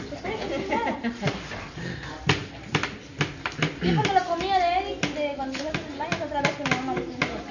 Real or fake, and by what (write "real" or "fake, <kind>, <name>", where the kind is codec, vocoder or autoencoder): real